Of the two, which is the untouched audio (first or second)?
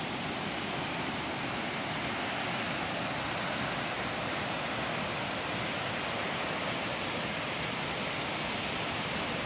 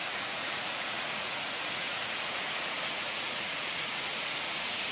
first